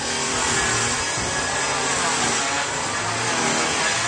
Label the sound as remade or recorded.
recorded